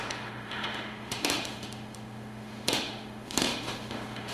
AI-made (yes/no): yes